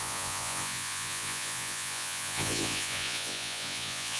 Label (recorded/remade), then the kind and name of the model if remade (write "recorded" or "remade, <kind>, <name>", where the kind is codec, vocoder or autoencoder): remade, vocoder, Vocos